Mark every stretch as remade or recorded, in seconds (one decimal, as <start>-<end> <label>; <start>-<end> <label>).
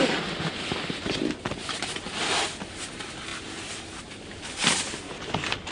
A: 0.0-5.7 recorded